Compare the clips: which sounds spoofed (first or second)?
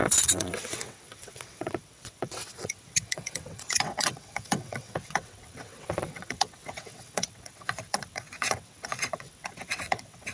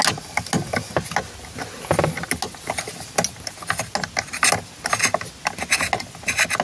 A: first